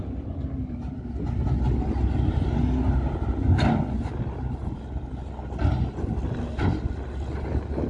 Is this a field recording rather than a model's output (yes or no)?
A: yes